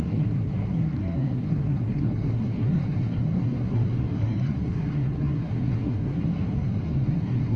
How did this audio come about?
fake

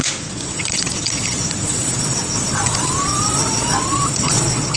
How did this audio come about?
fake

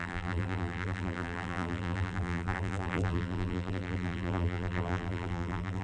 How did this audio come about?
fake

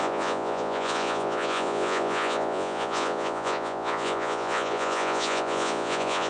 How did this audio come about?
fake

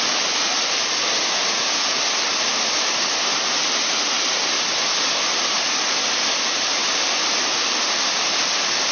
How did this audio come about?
real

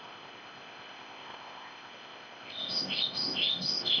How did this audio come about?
fake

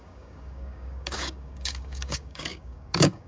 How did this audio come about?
fake